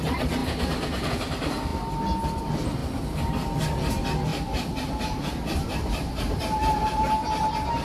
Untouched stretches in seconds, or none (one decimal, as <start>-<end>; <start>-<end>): 0.0-2.8; 3.3-4.3; 7.1-7.8